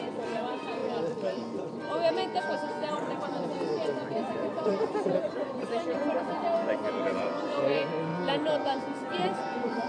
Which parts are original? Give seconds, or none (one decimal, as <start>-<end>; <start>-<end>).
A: 0.8-3.2; 6.0-6.9; 8.1-9.1